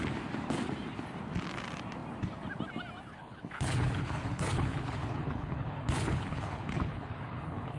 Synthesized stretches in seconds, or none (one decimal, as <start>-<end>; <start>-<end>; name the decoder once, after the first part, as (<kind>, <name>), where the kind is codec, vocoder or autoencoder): 3.1-7.8 (codec, HILCodec)